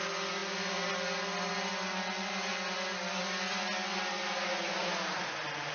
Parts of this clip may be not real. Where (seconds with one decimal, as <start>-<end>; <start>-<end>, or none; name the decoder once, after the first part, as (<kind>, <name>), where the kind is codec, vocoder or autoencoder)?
none